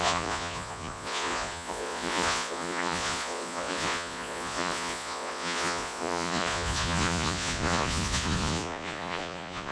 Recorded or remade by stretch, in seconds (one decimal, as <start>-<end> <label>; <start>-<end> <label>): 0.0-9.7 remade